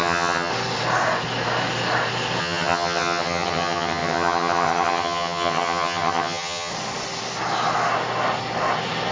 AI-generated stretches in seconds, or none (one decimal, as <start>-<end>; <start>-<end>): 0.0-0.5; 2.4-6.7